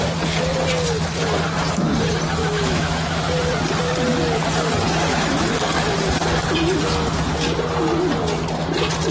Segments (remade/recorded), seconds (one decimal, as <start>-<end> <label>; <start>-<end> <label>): 0.0-2.4 recorded; 2.4-3.3 remade; 3.3-5.1 recorded; 5.1-5.6 remade; 5.6-9.1 recorded